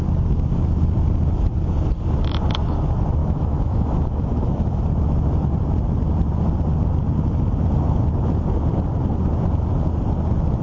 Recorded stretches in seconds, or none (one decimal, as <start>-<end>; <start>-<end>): 0.0-3.2; 4.8-10.6